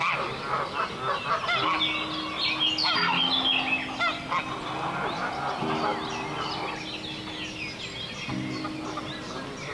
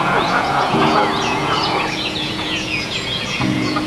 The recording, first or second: first